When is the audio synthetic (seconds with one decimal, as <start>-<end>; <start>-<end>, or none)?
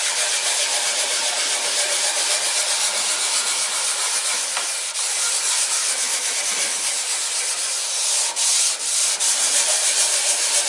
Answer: 5.8-6.4